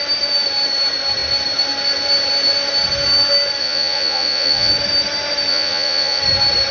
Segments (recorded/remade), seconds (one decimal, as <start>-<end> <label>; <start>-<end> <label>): 0.0-3.6 recorded; 3.6-4.7 remade; 4.7-5.5 recorded; 5.5-6.2 remade; 6.2-6.7 recorded